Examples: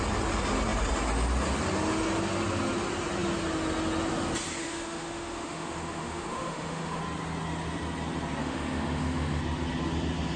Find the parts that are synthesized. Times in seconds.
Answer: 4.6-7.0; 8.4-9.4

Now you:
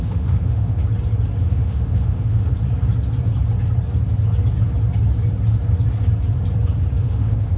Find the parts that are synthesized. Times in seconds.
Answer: 0.0-0.8; 1.4-2.5; 7.0-7.6

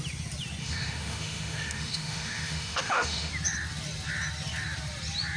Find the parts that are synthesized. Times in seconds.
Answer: 0.6-3.3

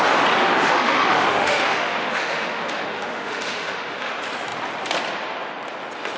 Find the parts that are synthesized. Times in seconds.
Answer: 0.4-4.1

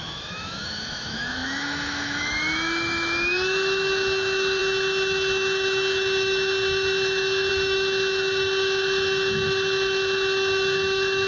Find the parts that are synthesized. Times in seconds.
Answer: 0.0-11.3

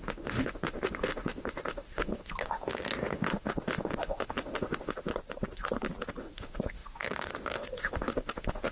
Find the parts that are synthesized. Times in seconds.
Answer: 0.0-5.1; 6.2-8.7

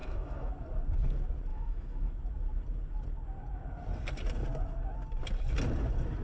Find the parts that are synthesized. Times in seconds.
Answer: 0.0-0.5; 1.5-2.1

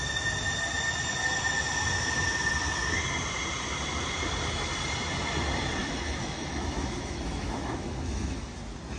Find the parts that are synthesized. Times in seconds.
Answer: 5.8-8.5